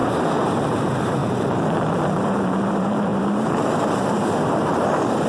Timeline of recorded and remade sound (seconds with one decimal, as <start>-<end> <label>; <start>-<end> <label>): 0.0-1.2 remade; 1.2-1.9 recorded; 1.9-5.3 remade